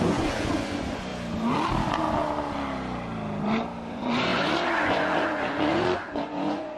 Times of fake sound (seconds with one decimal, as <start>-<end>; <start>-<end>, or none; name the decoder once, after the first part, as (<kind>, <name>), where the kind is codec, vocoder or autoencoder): 0.0-1.1 (vocoder, Vocos); 3.9-6.8